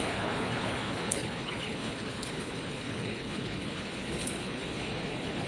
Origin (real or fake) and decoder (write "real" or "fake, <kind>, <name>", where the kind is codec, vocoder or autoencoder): fake, codec, HILCodec